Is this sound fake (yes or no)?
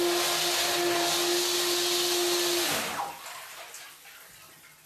no